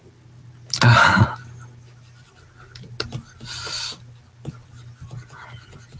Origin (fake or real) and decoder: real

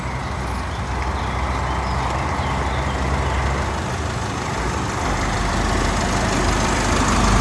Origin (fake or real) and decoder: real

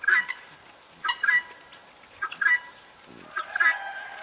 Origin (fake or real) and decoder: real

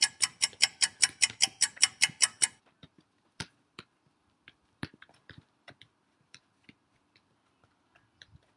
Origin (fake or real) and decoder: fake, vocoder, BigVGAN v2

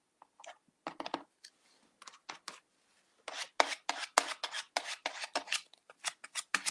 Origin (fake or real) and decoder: real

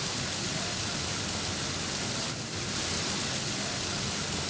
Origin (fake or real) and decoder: real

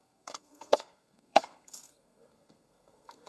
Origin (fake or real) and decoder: fake, codec, SNAC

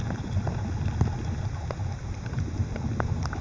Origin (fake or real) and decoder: real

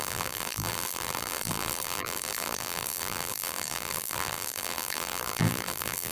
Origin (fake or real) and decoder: fake, vocoder, BigVGAN v2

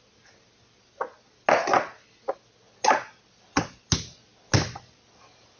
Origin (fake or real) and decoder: real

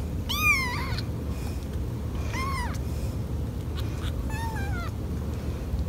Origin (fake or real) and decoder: real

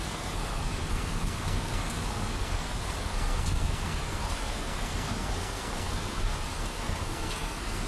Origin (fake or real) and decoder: fake, codec, SNAC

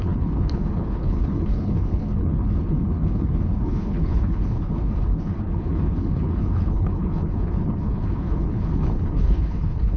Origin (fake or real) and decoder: fake, codec, HILCodec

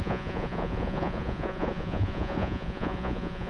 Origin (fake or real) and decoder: fake, vocoder, Vocos